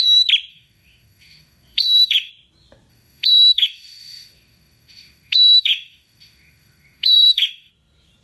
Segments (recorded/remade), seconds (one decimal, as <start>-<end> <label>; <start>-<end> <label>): 0.0-0.5 recorded; 0.5-2.3 remade; 2.3-2.9 recorded; 2.9-7.7 remade; 7.7-8.2 recorded